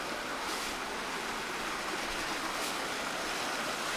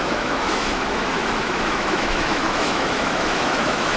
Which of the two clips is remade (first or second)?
second